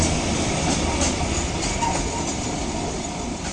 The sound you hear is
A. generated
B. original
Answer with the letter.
A